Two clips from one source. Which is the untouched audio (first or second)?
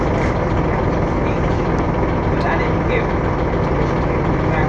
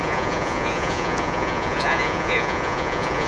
first